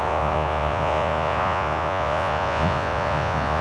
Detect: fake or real fake